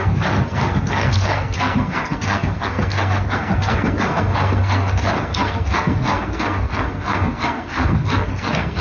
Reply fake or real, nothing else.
fake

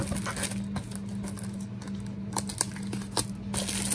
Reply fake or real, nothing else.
real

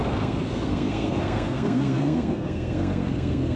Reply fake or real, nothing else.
fake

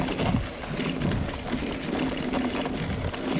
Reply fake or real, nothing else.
real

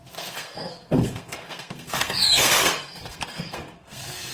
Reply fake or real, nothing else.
fake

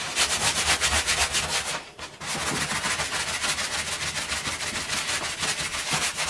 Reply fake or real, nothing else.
real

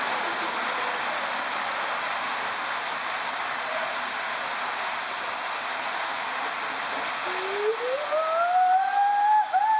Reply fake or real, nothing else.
real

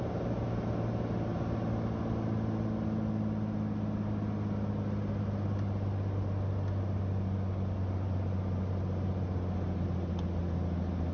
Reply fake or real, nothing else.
real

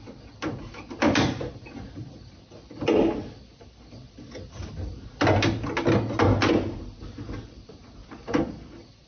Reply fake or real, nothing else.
real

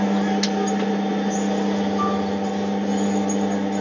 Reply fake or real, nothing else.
real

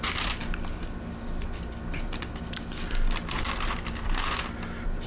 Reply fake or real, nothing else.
real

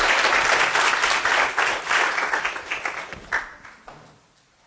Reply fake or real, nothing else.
real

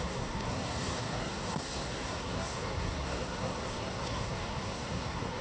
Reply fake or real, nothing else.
fake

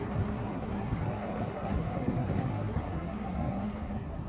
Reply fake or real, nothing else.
fake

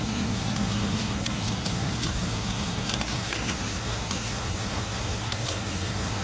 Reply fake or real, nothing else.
fake